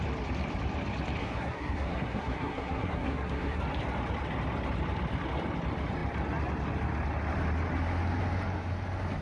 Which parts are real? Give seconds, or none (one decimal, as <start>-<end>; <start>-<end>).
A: 0.0-1.2; 3.6-9.2